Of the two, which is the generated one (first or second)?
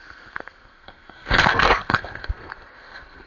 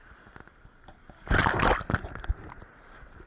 first